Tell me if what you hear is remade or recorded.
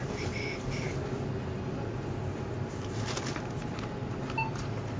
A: recorded